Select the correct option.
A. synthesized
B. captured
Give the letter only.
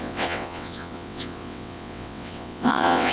A